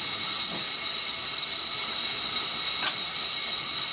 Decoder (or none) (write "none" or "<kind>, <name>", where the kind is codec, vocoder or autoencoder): none